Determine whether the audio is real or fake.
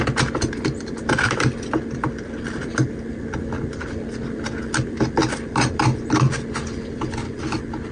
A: real